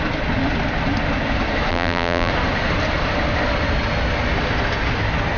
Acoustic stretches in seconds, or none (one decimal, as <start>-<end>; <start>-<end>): 0.0-1.7; 2.3-5.4